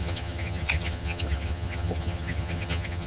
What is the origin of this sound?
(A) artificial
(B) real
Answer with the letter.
A